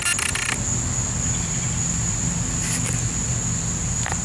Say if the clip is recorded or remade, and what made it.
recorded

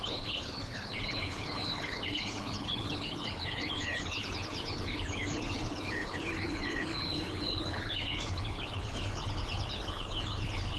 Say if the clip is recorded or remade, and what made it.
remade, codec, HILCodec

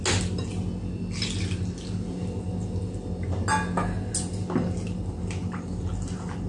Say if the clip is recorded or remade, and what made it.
recorded